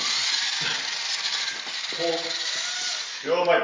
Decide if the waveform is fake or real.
real